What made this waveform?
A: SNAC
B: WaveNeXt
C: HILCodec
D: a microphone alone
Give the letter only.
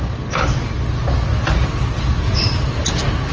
D